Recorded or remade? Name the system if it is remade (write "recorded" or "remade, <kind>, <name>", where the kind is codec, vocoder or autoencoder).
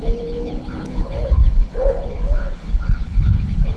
remade, codec, HILCodec